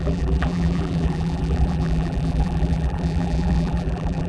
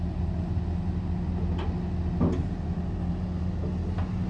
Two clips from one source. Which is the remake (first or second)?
first